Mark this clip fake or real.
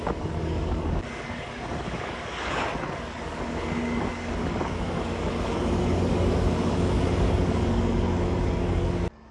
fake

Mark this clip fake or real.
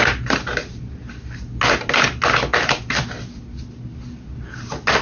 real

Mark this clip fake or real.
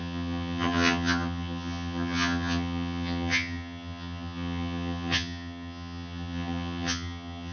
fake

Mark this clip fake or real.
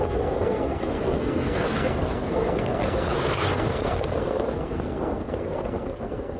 fake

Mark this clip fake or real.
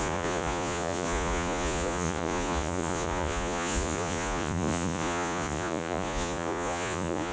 fake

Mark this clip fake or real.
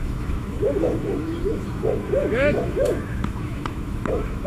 fake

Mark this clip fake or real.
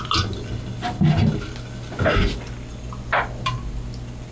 real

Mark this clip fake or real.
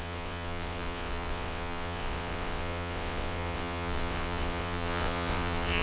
fake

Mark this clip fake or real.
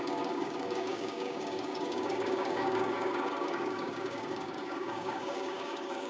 fake